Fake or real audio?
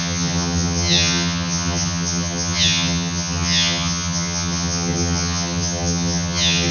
fake